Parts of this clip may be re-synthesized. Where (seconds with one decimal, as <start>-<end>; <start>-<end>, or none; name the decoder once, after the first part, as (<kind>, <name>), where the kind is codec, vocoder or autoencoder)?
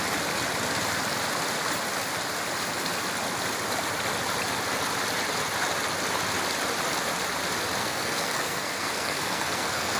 7.8-10.0 (codec, SNAC)